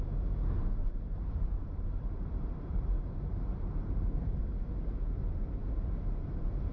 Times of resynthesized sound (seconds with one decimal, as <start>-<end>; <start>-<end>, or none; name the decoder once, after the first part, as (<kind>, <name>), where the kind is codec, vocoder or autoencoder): 0.8-4.4 (vocoder, BigVGAN v2); 5.6-6.7